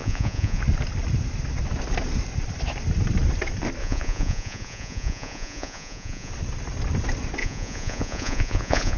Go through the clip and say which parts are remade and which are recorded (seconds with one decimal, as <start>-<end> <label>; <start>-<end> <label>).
0.0-0.6 remade; 0.6-3.8 recorded; 3.8-6.3 remade; 6.3-7.4 recorded; 7.4-9.0 remade